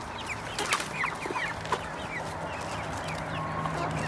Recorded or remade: recorded